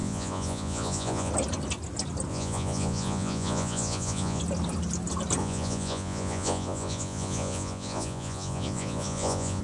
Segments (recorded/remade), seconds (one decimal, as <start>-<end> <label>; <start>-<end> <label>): 0.0-1.3 remade; 1.3-2.3 recorded; 2.3-4.4 remade; 4.4-5.4 recorded; 5.4-9.6 remade